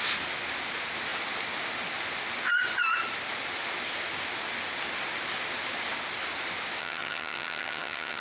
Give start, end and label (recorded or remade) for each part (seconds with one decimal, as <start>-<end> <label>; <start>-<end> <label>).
0.0-6.8 recorded; 6.8-8.2 remade